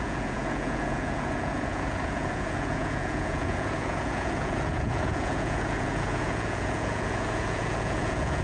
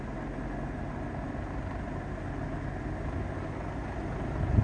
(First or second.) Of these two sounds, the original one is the second